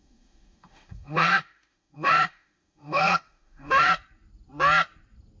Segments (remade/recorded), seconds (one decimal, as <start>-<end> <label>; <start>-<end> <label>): 0.0-3.9 remade; 3.9-5.4 recorded